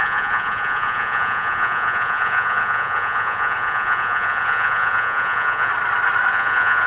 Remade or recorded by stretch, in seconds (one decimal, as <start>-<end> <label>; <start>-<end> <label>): 0.0-5.7 remade; 5.7-6.3 recorded; 6.3-6.9 remade